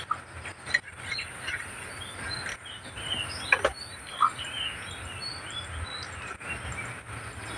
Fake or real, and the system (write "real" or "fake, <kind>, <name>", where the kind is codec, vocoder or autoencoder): real